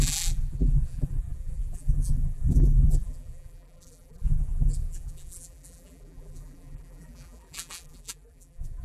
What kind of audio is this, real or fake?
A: fake